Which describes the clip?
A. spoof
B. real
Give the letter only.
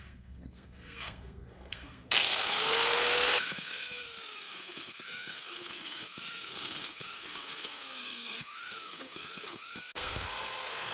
A